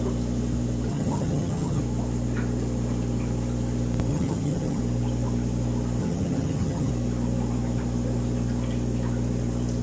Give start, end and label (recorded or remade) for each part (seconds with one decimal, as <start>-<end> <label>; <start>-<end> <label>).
0.0-0.9 recorded; 0.9-1.8 remade; 1.8-4.1 recorded; 4.1-4.8 remade; 4.8-6.0 recorded; 6.0-6.9 remade; 6.9-9.8 recorded